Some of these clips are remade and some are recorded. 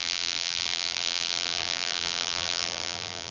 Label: remade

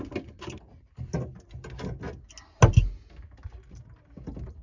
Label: recorded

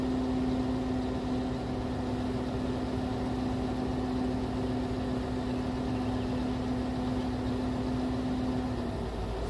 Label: recorded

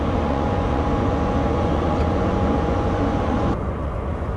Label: remade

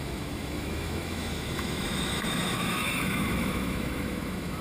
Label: remade